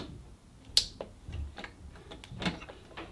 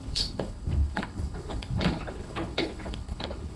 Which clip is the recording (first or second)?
first